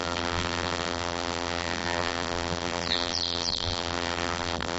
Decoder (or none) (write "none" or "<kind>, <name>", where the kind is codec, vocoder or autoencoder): vocoder, BigVGAN v2